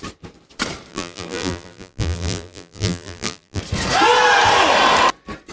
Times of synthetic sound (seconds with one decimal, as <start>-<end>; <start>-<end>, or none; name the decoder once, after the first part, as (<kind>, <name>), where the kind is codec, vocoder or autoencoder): 0.9-3.6 (vocoder, BigVGAN v2)